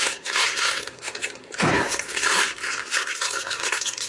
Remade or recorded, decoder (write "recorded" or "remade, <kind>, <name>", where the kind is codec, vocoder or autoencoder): remade, codec, SNAC